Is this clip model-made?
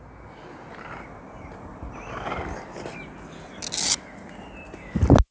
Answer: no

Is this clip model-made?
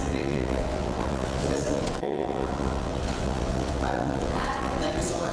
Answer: yes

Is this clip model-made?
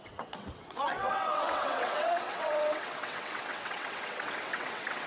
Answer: yes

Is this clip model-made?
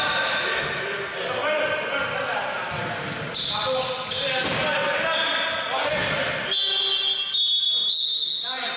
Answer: no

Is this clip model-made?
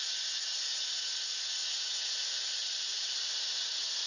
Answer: no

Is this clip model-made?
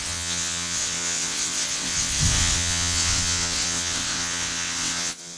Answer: yes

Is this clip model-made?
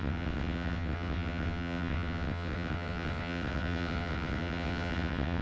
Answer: yes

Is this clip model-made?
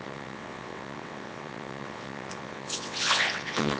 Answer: yes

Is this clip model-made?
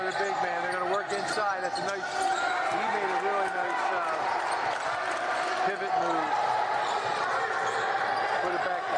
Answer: no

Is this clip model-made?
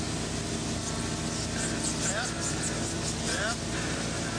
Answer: no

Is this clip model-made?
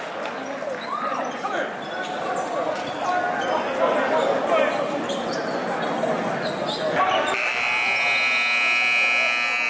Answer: no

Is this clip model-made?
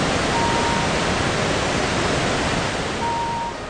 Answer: no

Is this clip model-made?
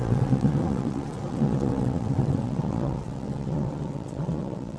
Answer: yes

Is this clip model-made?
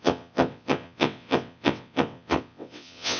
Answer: yes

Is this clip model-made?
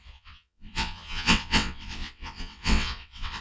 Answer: yes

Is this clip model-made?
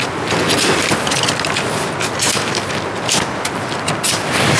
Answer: no